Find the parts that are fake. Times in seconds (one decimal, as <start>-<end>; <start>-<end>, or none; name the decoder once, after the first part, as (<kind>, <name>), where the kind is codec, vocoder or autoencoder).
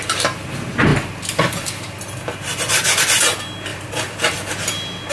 0.9-3.0 (vocoder, BigVGAN v2); 3.7-4.5